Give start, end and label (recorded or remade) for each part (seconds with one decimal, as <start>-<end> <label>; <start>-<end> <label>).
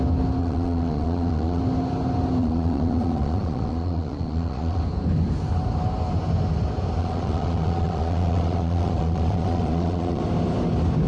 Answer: 0.0-0.4 recorded; 0.4-1.6 remade; 1.6-2.4 recorded; 2.4-4.8 remade; 4.8-7.0 recorded; 7.0-10.2 remade; 10.2-11.1 recorded